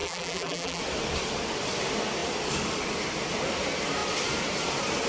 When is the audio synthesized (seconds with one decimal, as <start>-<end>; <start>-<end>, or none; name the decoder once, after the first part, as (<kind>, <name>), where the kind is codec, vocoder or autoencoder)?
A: 0.0-0.8 (vocoder, BigVGAN v2)